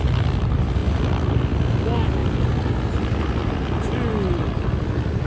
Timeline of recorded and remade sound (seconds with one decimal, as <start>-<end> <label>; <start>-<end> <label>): 0.0-5.3 recorded

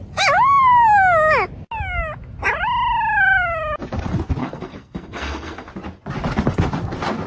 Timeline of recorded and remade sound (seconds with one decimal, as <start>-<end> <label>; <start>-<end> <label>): 0.0-4.4 recorded; 4.4-5.7 remade; 5.7-7.3 recorded

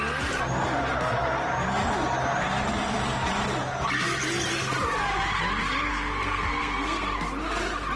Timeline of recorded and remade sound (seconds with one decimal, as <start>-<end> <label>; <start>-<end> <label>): 0.0-5.9 recorded; 5.9-7.0 remade; 7.0-8.0 recorded

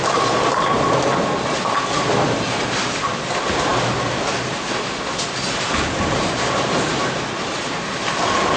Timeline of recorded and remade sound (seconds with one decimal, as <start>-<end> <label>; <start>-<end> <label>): 0.0-8.6 recorded

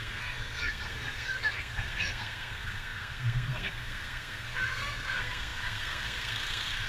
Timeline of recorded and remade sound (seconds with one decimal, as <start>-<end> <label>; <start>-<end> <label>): 0.0-6.9 remade

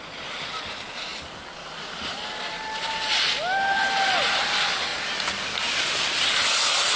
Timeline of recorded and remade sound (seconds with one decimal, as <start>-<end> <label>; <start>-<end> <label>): 0.0-7.0 recorded

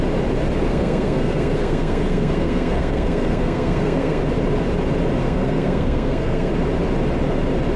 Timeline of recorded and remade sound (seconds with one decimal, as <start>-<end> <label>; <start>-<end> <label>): 0.0-0.7 recorded; 0.7-4.2 remade; 4.2-5.2 recorded; 5.2-6.5 remade; 6.5-7.8 recorded

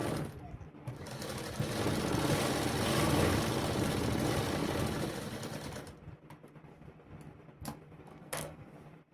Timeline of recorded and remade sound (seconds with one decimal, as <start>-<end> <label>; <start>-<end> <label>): 0.0-8.1 recorded; 8.1-8.7 remade; 8.7-9.1 recorded